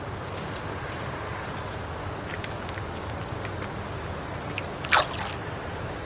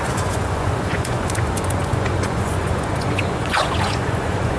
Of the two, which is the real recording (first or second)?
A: first